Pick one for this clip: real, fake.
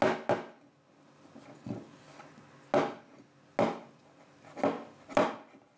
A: real